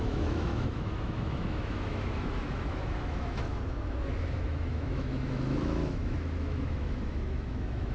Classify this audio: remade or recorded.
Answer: remade